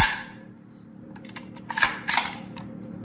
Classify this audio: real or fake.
fake